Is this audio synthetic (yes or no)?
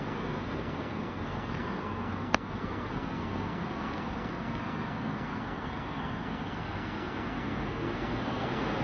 yes